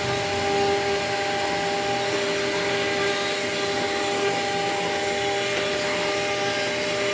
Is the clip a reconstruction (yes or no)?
no